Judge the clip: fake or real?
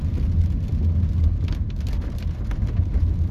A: real